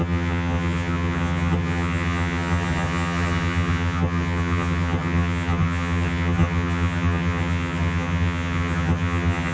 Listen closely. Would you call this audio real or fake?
fake